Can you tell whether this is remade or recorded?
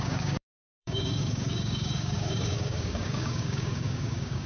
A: remade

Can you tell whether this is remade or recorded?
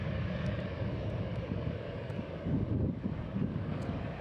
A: remade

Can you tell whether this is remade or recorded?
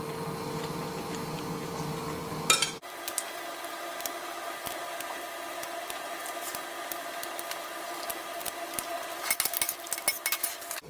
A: recorded